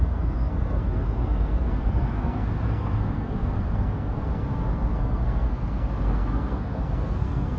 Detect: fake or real fake